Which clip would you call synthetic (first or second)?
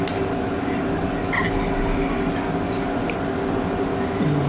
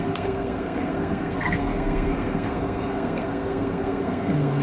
second